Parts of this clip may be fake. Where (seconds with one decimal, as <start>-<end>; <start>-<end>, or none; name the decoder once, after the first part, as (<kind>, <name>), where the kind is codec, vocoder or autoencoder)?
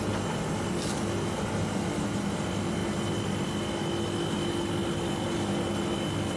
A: none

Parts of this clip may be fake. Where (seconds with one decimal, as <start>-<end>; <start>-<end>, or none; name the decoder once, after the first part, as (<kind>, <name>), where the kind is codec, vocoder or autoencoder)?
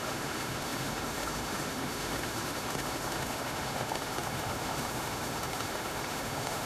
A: 0.0-6.7 (autoencoder, DAC-VAE)